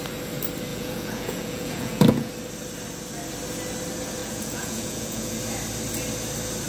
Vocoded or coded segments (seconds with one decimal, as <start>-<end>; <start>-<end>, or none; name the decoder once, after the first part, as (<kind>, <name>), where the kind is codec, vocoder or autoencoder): 0.7-2.3 (vocoder, Vocos); 4.2-5.4